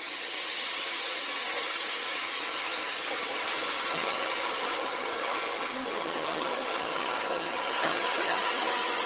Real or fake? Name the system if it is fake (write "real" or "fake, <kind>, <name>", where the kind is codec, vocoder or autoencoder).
fake, vocoder, HiFi-GAN